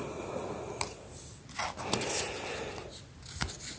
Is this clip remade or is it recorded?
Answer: recorded